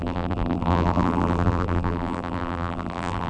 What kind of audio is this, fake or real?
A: fake